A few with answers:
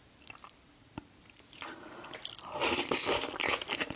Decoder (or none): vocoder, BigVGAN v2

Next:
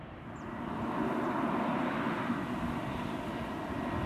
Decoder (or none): none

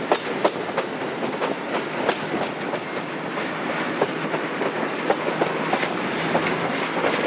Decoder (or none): none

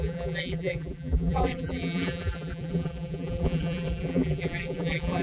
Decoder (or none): vocoder, BigVGAN v2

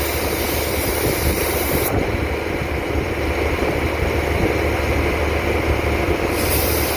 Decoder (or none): vocoder, BigVGAN v2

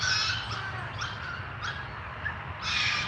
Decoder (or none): none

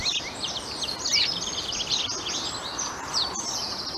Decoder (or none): none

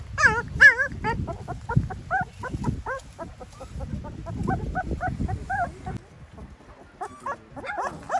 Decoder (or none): none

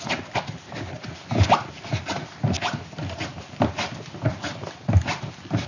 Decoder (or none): none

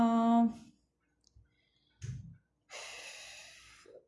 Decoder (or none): none